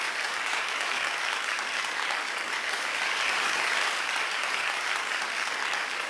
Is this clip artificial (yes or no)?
yes